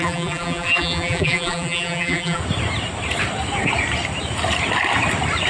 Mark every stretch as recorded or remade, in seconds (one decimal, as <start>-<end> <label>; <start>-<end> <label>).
0.0-2.4 remade; 2.4-5.5 recorded